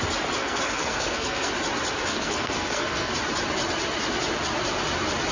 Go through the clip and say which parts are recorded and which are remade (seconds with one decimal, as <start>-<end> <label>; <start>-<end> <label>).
0.0-0.4 recorded; 0.4-1.5 remade; 1.5-2.1 recorded; 2.1-3.1 remade; 3.1-5.3 recorded